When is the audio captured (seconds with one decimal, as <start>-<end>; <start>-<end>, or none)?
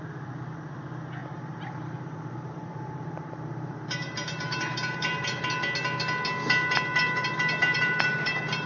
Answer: 0.0-1.2; 5.4-7.6